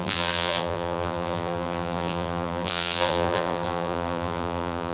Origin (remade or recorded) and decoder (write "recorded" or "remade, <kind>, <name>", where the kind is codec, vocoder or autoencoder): remade, vocoder, BigVGAN v2